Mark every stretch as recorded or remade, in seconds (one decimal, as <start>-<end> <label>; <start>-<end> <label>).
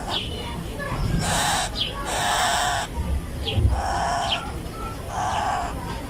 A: 0.0-2.2 remade; 2.2-6.1 recorded